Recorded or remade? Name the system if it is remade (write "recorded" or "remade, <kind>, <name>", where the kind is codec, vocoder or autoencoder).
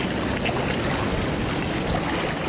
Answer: recorded